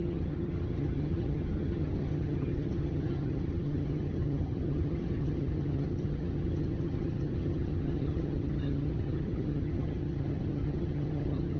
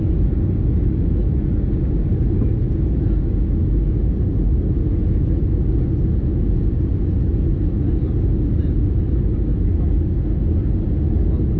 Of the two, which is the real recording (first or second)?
second